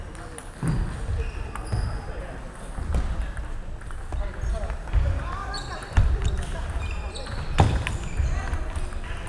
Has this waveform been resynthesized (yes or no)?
no